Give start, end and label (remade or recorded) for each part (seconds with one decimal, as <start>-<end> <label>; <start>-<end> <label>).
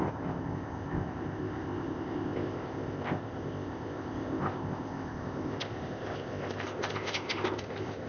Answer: 0.0-8.1 remade